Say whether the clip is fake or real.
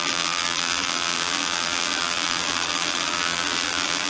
fake